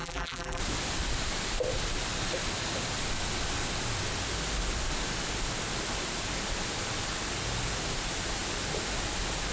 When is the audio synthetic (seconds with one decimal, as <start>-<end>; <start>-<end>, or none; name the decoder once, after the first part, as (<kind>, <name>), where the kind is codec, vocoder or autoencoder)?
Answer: 0.0-0.6 (vocoder, BigVGAN v2)